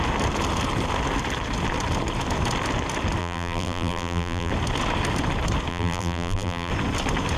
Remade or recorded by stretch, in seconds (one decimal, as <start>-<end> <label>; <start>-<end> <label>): 0.0-3.2 recorded; 3.2-4.5 remade; 4.5-5.7 recorded; 5.7-6.7 remade; 6.7-7.4 recorded